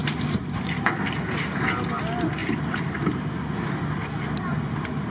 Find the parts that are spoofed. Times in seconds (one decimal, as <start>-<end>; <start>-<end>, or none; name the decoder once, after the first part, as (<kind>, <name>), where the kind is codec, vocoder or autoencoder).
2.4-3.3 (vocoder, BigVGAN v2)